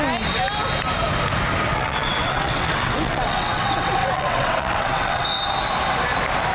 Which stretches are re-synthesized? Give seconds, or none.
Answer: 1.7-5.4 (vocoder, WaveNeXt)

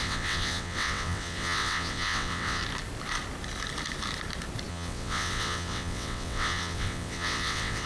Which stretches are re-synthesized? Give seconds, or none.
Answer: 0.0-2.6 (vocoder, WaveNeXt); 4.7-7.9